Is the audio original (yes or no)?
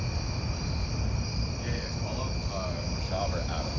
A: yes